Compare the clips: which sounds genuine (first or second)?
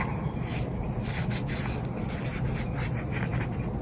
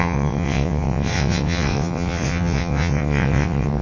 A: first